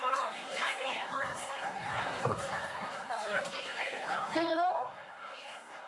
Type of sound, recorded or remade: remade